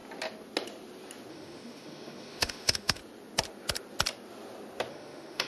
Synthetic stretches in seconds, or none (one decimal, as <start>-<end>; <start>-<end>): 1.3-3.0; 4.9-5.5